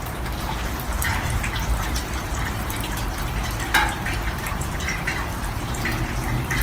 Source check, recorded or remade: remade